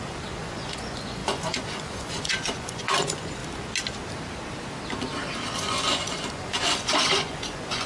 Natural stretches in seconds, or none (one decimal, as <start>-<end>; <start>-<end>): 3.4-5.5